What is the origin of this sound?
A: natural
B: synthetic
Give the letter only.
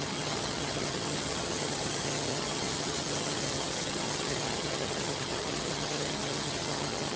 B